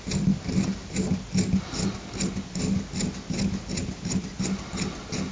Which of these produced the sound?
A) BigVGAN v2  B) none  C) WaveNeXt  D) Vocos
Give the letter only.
B